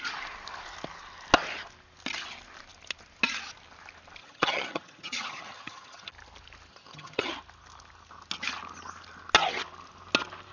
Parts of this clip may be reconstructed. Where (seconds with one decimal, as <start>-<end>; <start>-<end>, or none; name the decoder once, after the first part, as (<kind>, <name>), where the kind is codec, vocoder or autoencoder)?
4.2-6.1 (vocoder, HiFi-GAN); 6.7-7.3